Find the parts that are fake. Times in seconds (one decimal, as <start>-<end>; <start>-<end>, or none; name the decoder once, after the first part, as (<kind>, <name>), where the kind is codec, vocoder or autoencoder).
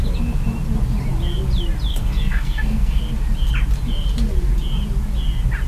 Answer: 1.9-3.0 (codec, SNAC)